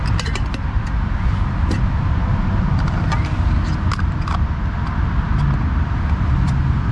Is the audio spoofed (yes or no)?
no